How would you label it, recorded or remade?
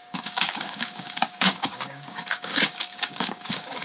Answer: remade